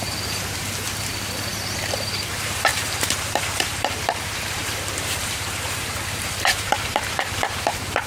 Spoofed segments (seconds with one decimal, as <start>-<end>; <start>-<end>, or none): 0.0-8.1